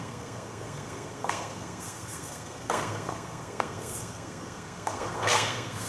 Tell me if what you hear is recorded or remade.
remade